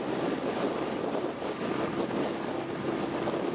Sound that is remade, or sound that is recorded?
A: recorded